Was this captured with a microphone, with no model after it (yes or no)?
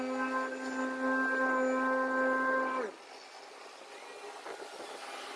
yes